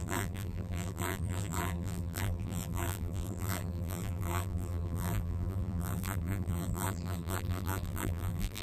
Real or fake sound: fake